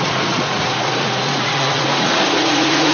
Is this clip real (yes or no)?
no